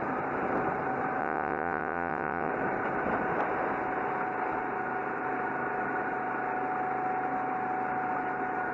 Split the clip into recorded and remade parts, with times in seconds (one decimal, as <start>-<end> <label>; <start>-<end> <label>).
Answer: 0.0-1.2 recorded; 1.2-2.5 remade; 2.5-8.7 recorded